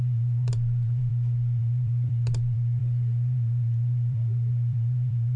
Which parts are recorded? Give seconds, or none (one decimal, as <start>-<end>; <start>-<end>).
1.1-1.6